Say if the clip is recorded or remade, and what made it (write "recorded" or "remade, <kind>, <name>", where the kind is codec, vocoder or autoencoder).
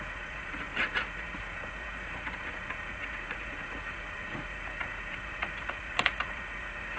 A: remade, vocoder, Vocos